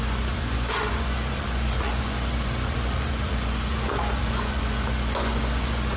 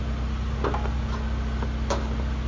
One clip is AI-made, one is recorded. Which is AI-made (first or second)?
first